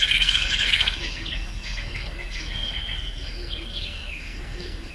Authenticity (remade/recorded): remade